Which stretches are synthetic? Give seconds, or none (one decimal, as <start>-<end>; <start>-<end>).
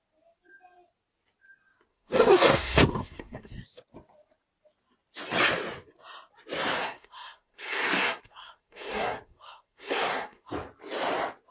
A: 1.9-3.5; 6.8-10.5